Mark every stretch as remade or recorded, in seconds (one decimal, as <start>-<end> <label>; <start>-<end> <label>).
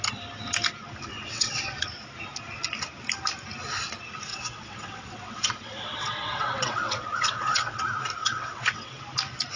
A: 0.0-1.1 recorded; 1.1-1.6 remade; 1.6-4.3 recorded; 4.3-7.8 remade; 7.8-8.2 recorded; 8.2-9.0 remade; 9.0-9.6 recorded